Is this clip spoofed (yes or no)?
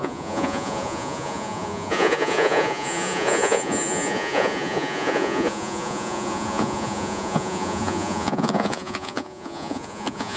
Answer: yes